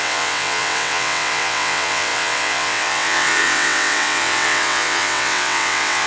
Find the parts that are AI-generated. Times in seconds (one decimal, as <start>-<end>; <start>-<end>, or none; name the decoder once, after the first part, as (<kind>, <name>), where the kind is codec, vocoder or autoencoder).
0.0-6.1 (vocoder, WaveNeXt)